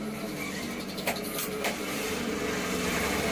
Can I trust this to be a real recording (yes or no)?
yes